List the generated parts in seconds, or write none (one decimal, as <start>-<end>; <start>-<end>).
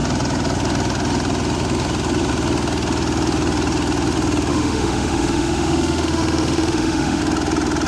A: 4.5-7.2